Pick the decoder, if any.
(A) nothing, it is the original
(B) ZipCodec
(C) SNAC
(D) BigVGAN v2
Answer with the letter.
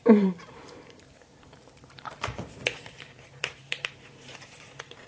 D